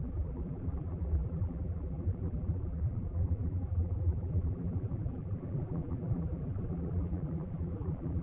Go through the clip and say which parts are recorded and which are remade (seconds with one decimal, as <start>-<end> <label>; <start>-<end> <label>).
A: 0.0-8.2 remade